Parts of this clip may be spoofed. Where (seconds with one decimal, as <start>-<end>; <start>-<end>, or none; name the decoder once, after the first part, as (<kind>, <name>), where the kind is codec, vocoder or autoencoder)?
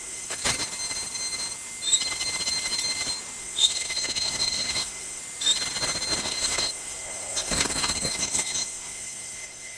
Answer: 0.0-0.4 (codec, SNAC); 3.4-5.2; 6.2-9.8